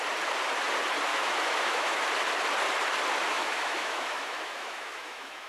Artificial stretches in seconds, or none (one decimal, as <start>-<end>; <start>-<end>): 1.1-2.0; 3.3-5.5